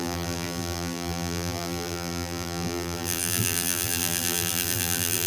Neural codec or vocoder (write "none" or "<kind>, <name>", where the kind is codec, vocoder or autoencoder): vocoder, BigVGAN v2